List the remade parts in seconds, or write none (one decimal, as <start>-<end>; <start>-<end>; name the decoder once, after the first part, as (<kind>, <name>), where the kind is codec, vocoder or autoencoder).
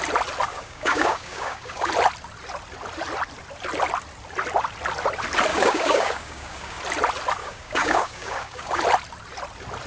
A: 0.5-1.9 (codec, DAC); 5.5-6.8; 7.4-8.8